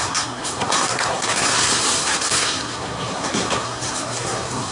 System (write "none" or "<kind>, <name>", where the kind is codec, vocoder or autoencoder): codec, SNAC